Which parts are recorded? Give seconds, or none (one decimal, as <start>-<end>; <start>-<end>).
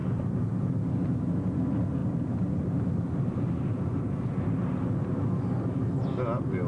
0.0-6.7